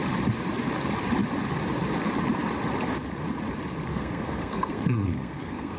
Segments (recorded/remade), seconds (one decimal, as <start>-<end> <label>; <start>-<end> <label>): 0.0-3.9 recorded; 3.9-5.8 remade